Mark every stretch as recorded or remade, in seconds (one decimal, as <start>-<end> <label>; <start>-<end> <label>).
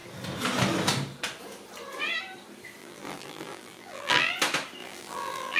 0.0-2.8 recorded; 2.8-4.3 remade; 4.3-4.8 recorded; 4.8-5.6 remade